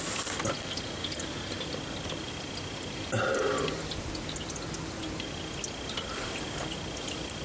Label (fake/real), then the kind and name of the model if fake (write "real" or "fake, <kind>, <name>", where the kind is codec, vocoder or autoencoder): real